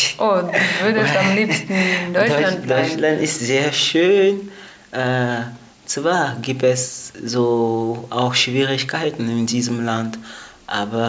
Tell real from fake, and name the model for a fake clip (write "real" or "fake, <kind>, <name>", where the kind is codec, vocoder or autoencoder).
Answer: real